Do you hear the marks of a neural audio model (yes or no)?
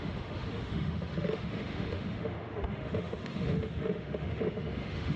yes